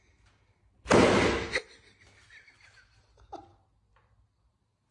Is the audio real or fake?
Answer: real